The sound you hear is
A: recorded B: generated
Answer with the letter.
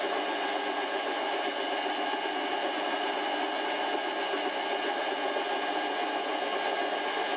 A